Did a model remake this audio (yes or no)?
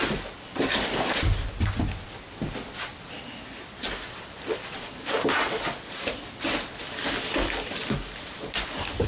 no